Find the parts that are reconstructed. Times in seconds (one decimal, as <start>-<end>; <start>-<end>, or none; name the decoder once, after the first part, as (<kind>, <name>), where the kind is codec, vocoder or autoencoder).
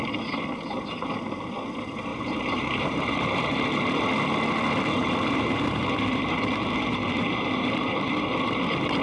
2.1-3.7 (vocoder, BigVGAN v2); 5.0-8.1